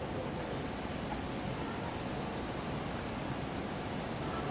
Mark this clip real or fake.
real